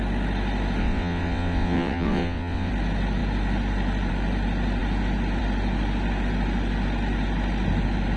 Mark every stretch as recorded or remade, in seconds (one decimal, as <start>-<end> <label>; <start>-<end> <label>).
0.0-0.8 recorded; 0.8-2.7 remade; 2.7-8.2 recorded